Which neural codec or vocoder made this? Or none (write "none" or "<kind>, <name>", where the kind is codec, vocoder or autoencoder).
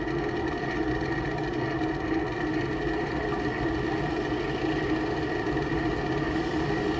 none